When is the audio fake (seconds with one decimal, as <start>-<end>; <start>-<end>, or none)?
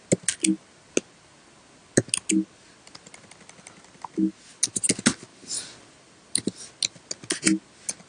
none